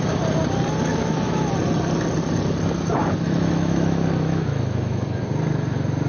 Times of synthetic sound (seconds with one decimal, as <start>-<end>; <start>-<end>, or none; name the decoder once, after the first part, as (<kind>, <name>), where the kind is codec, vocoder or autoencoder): 0.9-1.5 (autoencoder, DAC-VAE); 3.0-5.2